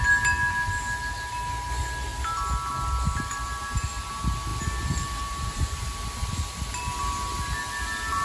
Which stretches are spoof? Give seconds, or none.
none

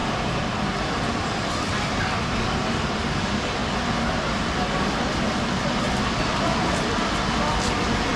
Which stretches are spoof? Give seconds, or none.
none

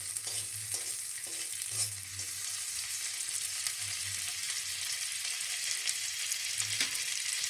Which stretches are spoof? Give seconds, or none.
none

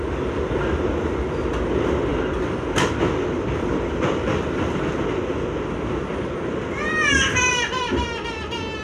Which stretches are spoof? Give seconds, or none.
none

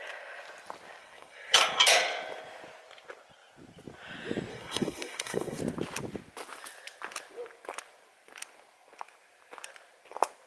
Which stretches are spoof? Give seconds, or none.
1.0-1.6 (codec, SNAC); 4.5-5.6

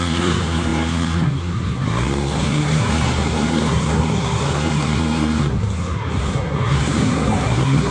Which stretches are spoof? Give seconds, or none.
0.0-7.9 (codec, SNAC)

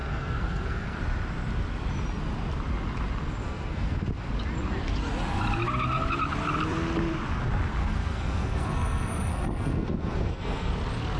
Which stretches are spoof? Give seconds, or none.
0.0-1.0 (codec, SNAC); 3.4-4.3; 7.8-10.7

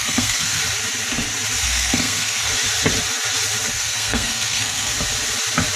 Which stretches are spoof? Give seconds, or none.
0.0-0.6 (codec, SNAC); 1.6-2.5; 3.7-4.9